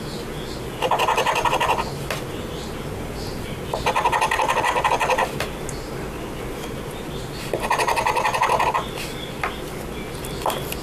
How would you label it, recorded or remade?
recorded